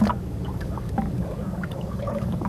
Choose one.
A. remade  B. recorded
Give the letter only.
A